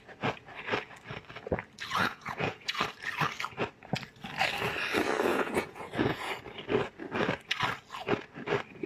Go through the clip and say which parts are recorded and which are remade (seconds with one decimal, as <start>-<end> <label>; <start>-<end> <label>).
0.0-2.0 recorded; 2.0-2.8 remade; 2.8-5.3 recorded; 5.3-6.3 remade; 6.3-8.9 recorded